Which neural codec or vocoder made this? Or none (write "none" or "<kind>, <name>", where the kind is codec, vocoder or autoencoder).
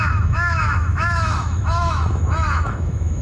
autoencoder, DAC-VAE